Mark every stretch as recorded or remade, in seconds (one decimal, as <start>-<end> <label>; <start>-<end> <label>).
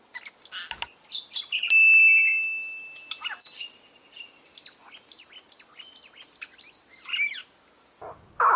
0.0-8.6 recorded